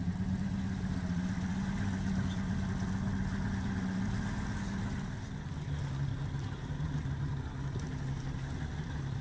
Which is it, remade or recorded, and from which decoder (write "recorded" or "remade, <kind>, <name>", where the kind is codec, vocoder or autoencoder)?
recorded